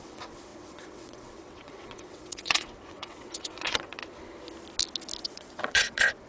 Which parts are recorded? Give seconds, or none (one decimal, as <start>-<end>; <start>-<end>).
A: 4.0-5.2